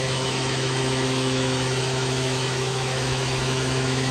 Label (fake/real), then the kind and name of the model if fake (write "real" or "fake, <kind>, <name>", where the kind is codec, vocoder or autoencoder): fake, autoencoder, DAC-VAE